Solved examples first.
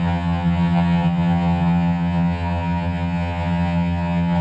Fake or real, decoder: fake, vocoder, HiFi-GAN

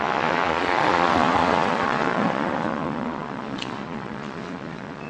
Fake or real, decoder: fake, vocoder, Vocos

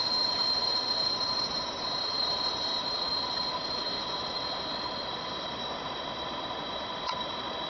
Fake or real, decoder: fake, vocoder, Vocos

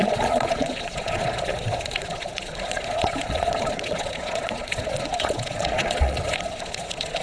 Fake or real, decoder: fake, vocoder, Vocos